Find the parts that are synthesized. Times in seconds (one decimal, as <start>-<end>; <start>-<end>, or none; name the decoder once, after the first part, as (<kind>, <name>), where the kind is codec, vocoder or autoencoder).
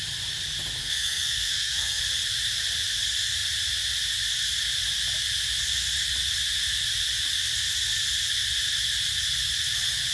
0.8-2.0 (codec, SNAC)